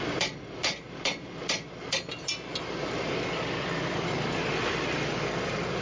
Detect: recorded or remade recorded